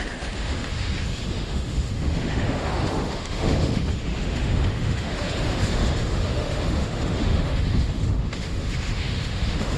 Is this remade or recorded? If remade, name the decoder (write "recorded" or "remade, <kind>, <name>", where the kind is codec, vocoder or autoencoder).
remade, autoencoder, DAC-VAE